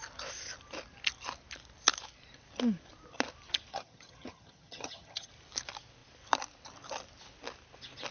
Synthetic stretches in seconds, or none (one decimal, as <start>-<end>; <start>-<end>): 3.7-5.3